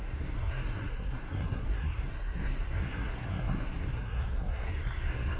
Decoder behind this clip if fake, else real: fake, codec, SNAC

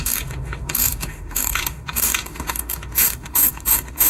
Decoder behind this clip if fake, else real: fake, autoencoder, DAC-VAE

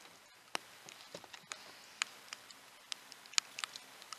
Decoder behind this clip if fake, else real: real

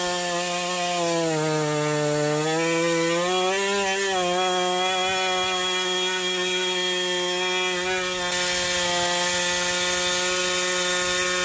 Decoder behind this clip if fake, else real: real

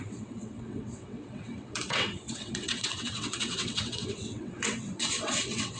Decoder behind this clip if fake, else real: fake, vocoder, WaveNeXt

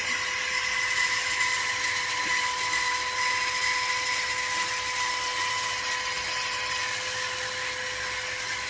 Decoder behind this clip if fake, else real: real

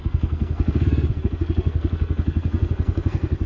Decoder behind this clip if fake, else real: fake, codec, SNAC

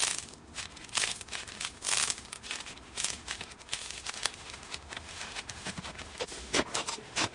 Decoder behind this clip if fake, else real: fake, autoencoder, DAC-VAE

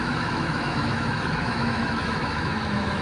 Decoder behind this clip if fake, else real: fake, autoencoder, DAC-VAE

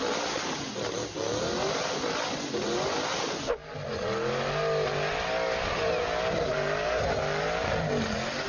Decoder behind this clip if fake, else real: real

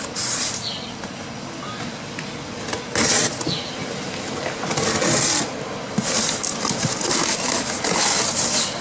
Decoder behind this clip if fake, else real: real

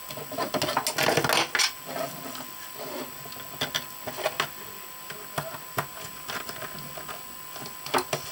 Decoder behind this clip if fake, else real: real